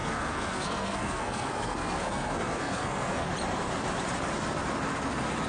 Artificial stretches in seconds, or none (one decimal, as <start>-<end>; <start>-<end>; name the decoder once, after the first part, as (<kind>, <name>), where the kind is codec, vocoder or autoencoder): 0.0-3.3 (codec, SNAC)